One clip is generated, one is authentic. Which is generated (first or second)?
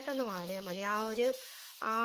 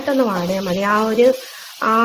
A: first